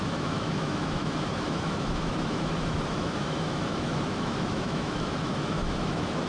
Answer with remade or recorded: remade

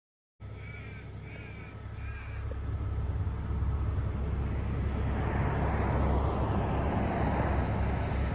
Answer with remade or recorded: recorded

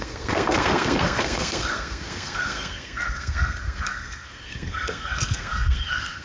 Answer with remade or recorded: remade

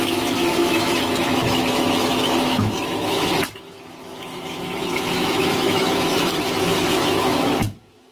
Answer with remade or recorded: remade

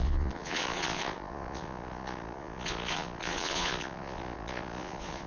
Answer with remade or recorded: remade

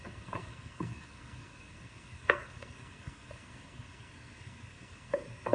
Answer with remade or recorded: remade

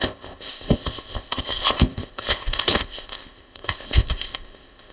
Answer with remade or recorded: remade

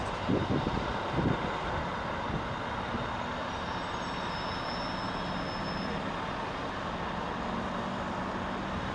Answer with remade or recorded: recorded